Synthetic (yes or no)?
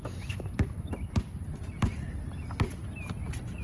no